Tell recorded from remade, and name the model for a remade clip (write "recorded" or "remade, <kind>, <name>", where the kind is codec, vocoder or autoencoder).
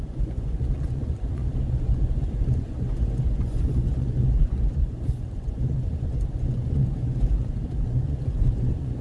remade, vocoder, Vocos